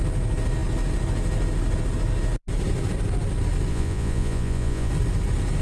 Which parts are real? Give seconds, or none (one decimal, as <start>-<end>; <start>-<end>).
0.0-3.7; 4.9-5.6